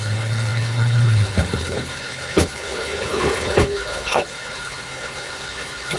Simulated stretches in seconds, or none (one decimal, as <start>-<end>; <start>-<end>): 0.0-6.0